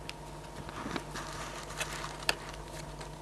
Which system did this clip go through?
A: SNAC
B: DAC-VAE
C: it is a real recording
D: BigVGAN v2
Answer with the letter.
C